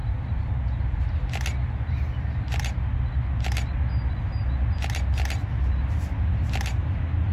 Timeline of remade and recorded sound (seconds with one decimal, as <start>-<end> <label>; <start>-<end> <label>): 0.0-7.3 recorded